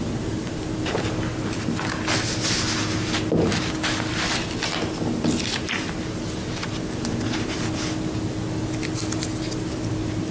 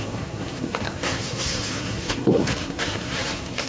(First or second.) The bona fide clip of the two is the first